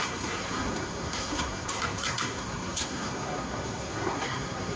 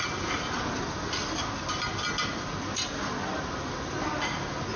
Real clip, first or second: second